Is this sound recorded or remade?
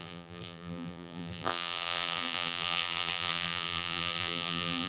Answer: remade